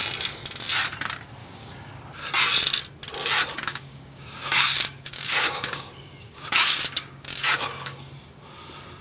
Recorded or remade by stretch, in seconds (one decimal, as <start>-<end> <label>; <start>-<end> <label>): 0.0-1.4 recorded; 1.4-2.0 remade; 2.0-3.7 recorded; 3.7-8.1 remade; 8.1-9.0 recorded